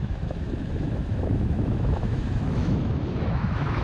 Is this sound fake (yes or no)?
yes